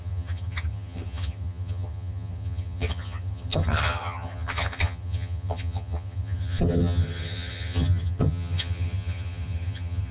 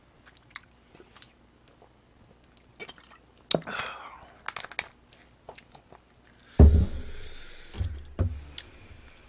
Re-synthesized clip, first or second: first